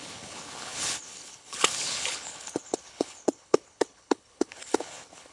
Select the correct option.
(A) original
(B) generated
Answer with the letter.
B